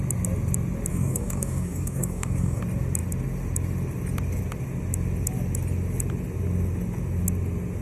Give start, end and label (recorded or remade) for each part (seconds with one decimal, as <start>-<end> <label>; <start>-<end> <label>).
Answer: 0.0-0.9 recorded; 0.9-2.6 remade; 2.6-7.8 recorded